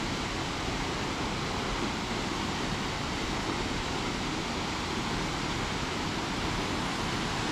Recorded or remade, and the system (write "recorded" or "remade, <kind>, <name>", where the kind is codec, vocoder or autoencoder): recorded